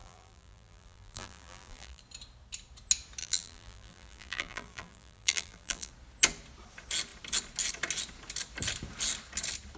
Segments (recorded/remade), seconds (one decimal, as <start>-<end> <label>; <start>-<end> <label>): 0.0-2.0 remade; 2.0-3.2 recorded; 3.2-5.9 remade; 5.9-9.8 recorded